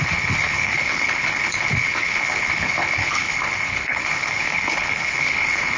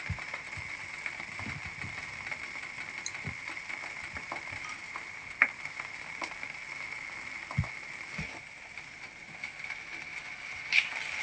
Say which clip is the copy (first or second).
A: first